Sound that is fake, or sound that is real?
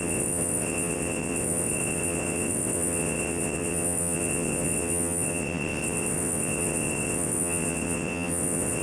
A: fake